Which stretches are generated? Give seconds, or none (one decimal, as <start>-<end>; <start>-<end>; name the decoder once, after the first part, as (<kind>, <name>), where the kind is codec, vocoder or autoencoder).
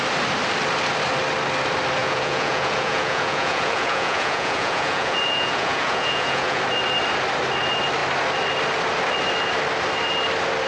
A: 2.0-6.6 (vocoder, Vocos)